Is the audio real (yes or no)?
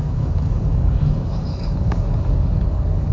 no